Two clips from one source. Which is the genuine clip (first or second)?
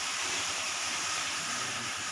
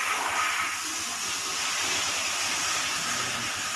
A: second